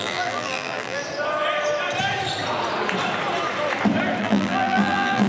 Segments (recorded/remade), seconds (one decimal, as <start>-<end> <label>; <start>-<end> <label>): 0.0-1.0 remade; 1.0-4.2 recorded; 4.2-5.3 remade